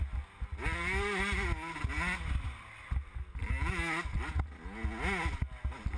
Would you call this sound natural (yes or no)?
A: yes